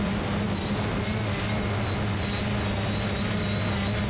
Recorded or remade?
recorded